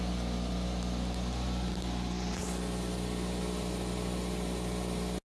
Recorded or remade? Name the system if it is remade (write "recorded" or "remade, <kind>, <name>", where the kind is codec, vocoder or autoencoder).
recorded